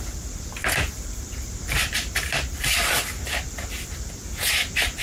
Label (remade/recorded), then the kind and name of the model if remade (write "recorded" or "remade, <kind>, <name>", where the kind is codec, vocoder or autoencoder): remade, vocoder, BigVGAN v2